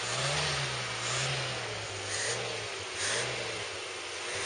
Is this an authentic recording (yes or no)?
yes